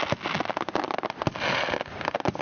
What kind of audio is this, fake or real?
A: real